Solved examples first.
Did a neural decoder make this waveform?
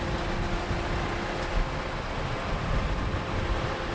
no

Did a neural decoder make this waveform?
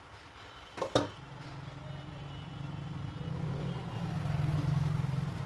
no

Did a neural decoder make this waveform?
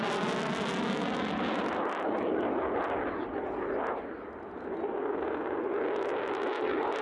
no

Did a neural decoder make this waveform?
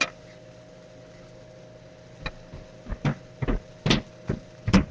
no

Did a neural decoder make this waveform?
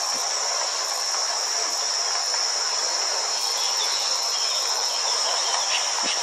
no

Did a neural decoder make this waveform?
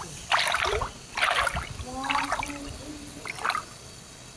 no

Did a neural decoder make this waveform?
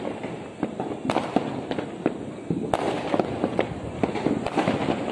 no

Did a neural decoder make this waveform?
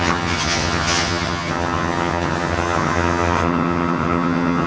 yes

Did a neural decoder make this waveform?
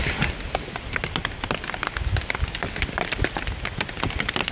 no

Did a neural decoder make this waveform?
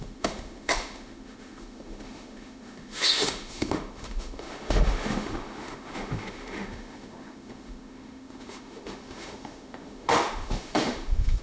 yes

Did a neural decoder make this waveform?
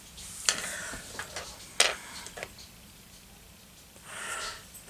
no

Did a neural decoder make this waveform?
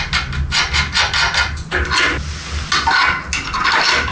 no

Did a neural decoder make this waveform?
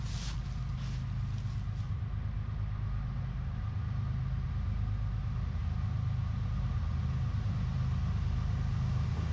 no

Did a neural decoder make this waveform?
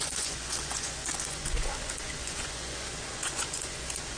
yes